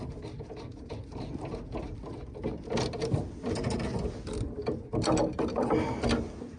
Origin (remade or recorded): recorded